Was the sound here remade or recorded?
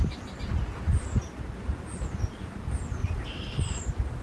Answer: recorded